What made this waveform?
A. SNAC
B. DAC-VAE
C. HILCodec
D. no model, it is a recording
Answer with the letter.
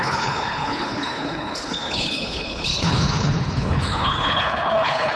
C